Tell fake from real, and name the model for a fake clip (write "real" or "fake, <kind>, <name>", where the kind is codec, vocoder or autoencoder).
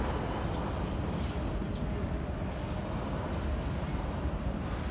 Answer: real